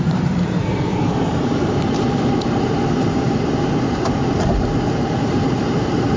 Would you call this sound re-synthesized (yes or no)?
yes